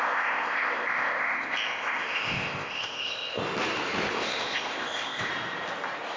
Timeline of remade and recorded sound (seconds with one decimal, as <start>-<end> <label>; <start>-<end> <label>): 0.0-3.4 remade; 3.4-4.1 recorded; 4.1-5.3 remade; 5.3-6.2 recorded